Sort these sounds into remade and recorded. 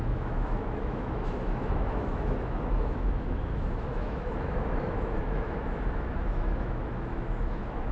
remade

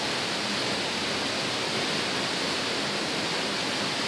recorded